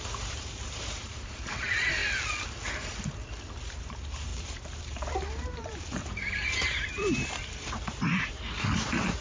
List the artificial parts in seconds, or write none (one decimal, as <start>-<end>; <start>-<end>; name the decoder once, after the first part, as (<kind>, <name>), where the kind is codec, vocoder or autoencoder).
0.0-2.0 (vocoder, BigVGAN v2); 3.8-9.2